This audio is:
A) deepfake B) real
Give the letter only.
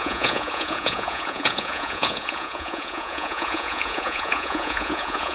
A